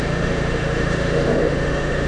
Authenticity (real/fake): fake